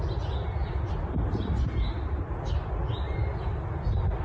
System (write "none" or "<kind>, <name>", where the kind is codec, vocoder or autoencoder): none